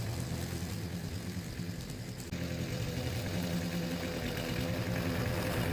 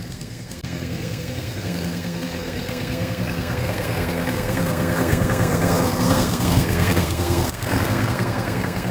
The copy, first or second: second